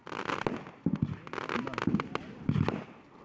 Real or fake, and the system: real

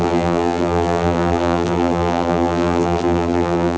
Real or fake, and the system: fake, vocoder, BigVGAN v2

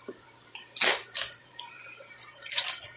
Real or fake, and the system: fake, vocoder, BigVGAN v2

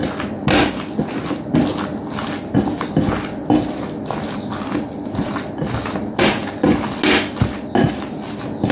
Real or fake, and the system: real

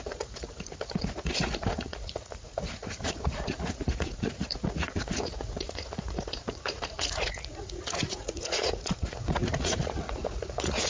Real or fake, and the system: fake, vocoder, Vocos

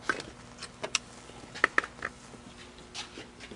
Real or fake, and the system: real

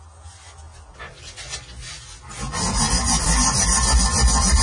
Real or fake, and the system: real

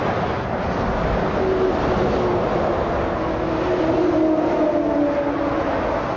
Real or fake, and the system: real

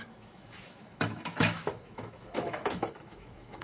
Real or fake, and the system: fake, autoencoder, DAC-VAE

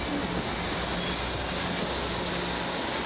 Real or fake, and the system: real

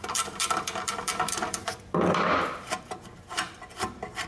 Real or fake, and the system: fake, vocoder, BigVGAN v2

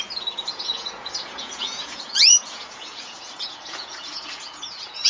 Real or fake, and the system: fake, vocoder, Vocos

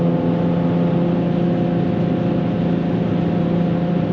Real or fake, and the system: real